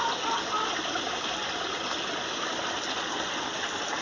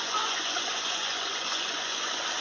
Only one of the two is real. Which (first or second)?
first